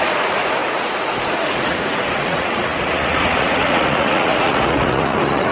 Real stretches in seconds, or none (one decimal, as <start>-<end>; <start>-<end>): none